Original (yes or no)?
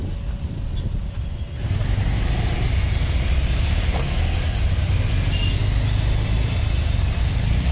yes